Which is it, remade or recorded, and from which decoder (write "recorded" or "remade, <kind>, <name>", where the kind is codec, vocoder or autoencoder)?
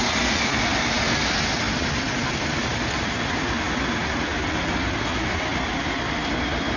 recorded